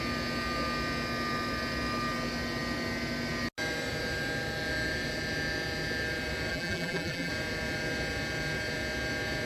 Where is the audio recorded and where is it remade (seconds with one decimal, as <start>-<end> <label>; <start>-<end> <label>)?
0.0-6.5 recorded; 6.5-7.3 remade; 7.3-9.5 recorded